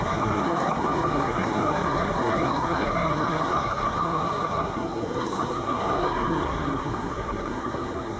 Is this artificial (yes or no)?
yes